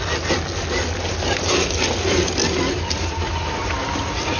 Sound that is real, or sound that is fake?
real